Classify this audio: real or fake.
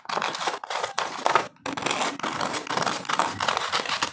real